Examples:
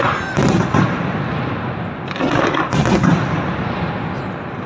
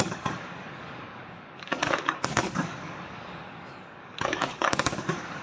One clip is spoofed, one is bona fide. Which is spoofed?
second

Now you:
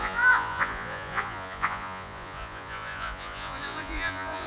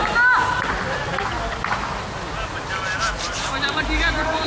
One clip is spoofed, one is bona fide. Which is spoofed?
first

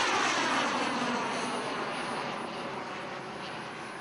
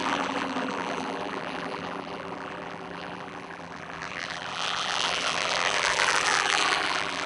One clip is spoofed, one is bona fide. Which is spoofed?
second